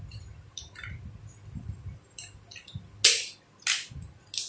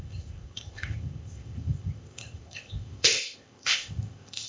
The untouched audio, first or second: first